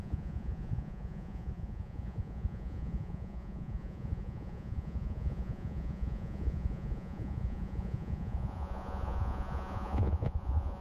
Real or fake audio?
fake